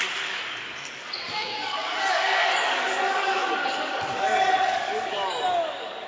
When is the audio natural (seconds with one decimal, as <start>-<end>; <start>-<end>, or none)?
none